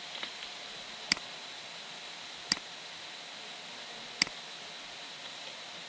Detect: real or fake real